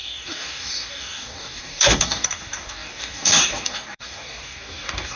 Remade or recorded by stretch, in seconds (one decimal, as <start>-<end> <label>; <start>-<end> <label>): 0.0-5.2 remade